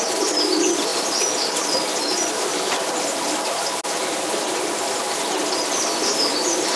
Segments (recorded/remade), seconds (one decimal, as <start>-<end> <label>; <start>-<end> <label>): 0.0-2.5 recorded; 2.5-3.8 remade; 3.8-6.8 recorded